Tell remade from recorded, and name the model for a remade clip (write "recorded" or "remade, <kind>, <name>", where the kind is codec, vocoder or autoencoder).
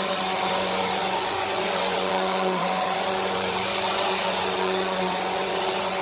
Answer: remade, vocoder, Vocos